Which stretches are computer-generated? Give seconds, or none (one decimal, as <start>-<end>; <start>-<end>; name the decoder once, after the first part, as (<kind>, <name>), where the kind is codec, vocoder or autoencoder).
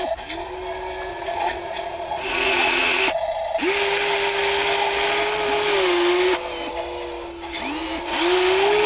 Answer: 1.1-3.0 (vocoder, Vocos)